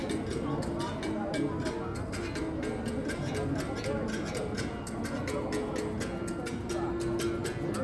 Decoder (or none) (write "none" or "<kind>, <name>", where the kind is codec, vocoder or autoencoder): none